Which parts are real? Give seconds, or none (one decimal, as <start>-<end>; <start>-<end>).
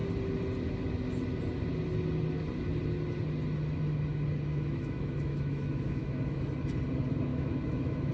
0.0-4.5; 6.4-7.3